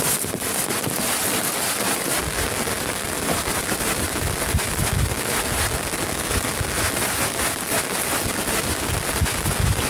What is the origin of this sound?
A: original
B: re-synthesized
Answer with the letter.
A